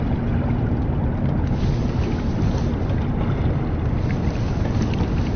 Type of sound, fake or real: real